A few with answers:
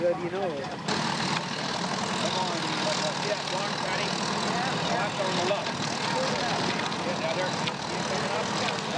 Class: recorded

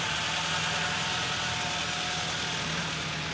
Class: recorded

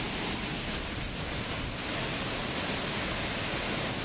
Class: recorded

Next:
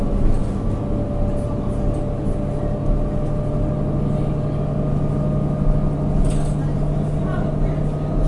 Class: recorded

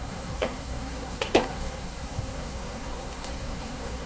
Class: remade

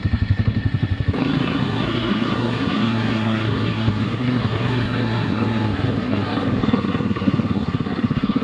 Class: remade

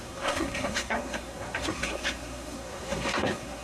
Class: remade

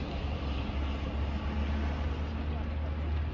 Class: recorded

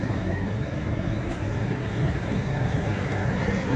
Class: remade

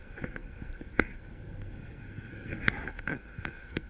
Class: remade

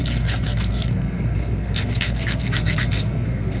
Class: remade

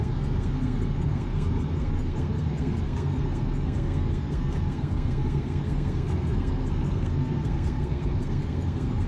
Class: remade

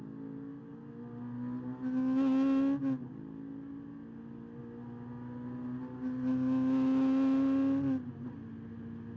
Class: recorded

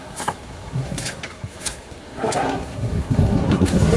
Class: remade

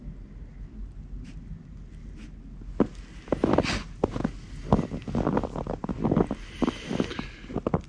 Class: recorded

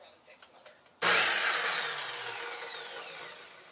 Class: recorded